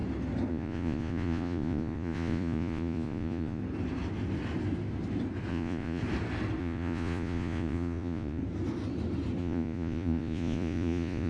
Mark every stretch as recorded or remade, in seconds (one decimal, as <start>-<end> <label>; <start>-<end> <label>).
0.0-0.5 recorded; 0.5-3.6 remade; 3.6-5.5 recorded; 5.5-6.0 remade; 6.0-6.6 recorded; 6.6-8.4 remade; 8.4-9.4 recorded; 9.4-11.3 remade